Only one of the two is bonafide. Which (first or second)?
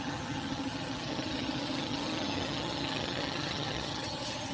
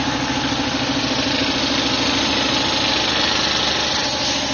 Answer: second